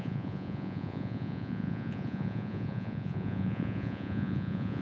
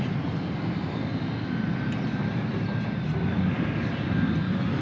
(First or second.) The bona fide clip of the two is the second